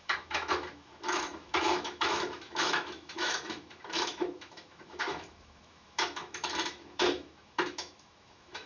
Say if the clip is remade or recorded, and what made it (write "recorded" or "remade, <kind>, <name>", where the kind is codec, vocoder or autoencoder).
remade, autoencoder, DAC-VAE